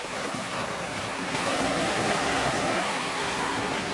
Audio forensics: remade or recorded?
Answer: remade